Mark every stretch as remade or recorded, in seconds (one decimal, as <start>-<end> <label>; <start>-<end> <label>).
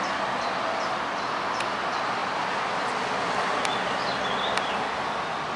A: 0.0-5.6 recorded